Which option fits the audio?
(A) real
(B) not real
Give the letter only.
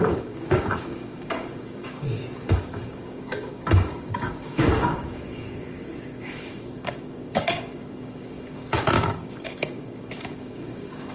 B